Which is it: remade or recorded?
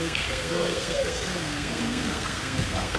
remade